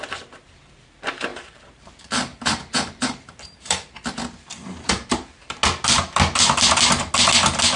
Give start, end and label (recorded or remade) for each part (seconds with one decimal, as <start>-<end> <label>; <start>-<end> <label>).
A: 0.0-1.3 recorded; 1.3-3.9 remade; 3.9-4.6 recorded; 4.6-5.6 remade; 5.6-7.8 recorded